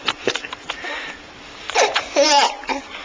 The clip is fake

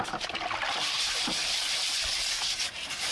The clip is fake